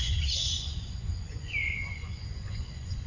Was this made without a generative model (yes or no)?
no